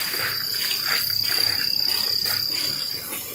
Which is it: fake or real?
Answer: real